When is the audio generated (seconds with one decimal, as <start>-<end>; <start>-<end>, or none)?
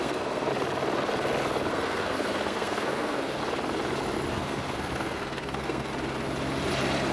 0.0-0.5; 1.7-3.4; 4.3-5.9